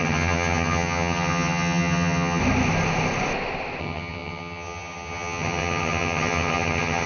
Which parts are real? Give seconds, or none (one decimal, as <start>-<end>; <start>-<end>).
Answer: 2.4-3.8